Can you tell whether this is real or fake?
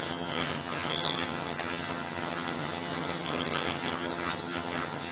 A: fake